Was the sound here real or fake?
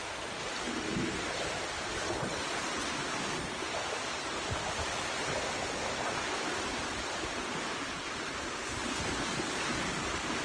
real